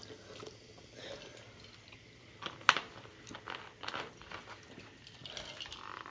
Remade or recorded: recorded